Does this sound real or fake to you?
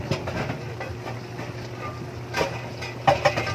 real